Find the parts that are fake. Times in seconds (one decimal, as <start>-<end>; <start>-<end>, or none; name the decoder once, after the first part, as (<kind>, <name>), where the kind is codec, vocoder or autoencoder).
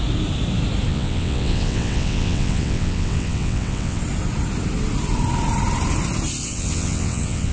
0.9-4.0 (vocoder, WaveNeXt); 6.4-7.5